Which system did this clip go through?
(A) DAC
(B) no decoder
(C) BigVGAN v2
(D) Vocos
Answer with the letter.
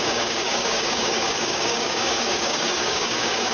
A